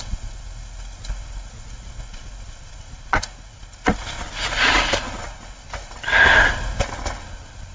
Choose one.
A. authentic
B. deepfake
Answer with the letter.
A